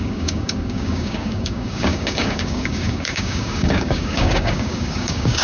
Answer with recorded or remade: remade